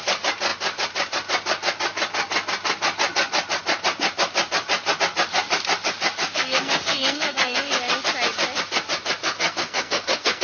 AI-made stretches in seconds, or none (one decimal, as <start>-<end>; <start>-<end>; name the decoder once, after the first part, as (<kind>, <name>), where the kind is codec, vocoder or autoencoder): 6.2-7.7 (codec, SNAC); 9.2-10.4